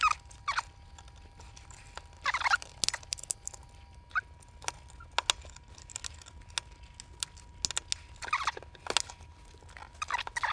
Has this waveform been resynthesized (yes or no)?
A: no